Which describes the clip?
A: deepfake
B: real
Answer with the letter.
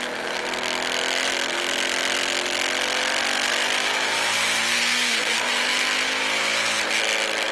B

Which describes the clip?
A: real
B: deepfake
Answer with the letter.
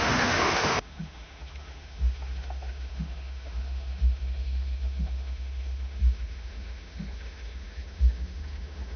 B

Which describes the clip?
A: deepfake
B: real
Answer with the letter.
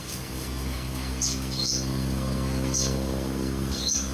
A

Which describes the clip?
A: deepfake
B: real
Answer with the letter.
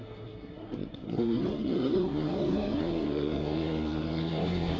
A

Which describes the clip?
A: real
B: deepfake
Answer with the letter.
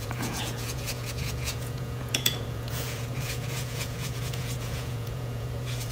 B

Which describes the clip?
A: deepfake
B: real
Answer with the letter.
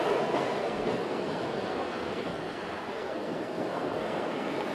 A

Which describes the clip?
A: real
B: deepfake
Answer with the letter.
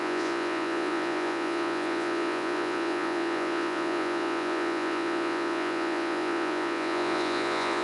B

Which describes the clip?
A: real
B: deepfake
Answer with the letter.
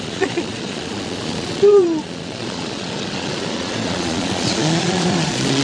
B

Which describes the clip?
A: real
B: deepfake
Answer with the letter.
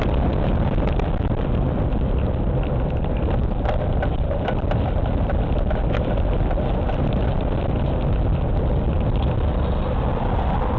A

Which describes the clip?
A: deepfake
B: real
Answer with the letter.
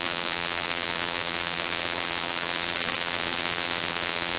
A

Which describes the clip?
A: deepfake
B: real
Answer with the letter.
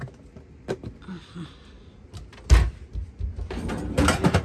B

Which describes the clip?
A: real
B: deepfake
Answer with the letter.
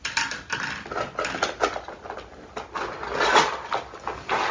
A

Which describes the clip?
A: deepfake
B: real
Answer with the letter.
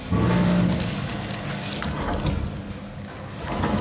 B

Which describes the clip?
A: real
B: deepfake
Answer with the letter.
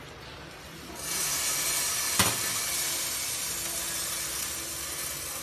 A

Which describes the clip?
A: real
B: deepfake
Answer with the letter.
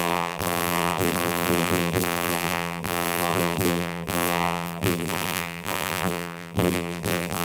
B